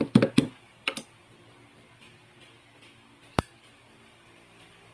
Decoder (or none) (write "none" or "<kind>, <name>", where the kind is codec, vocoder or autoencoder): none